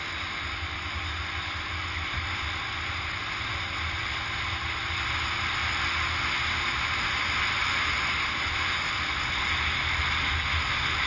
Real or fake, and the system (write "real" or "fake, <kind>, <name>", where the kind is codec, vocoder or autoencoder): real